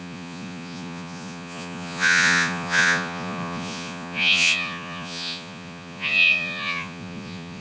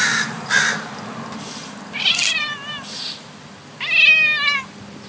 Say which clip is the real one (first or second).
second